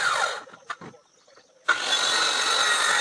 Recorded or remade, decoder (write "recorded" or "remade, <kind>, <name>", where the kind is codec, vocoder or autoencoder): recorded